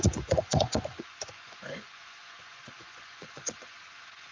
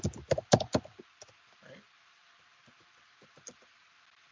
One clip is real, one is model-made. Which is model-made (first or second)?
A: first